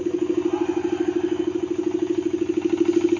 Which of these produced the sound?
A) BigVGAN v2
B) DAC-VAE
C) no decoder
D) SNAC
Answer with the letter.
C